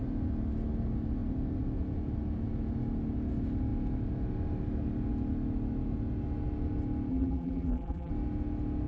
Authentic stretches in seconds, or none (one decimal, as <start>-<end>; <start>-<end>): 0.0-7.1; 8.1-8.9